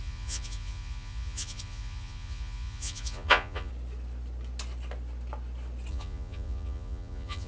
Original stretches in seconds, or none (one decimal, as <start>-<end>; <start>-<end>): 3.7-5.9